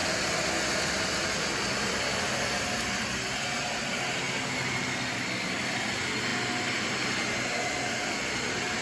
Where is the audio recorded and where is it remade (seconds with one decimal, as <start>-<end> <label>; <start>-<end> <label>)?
0.0-8.8 recorded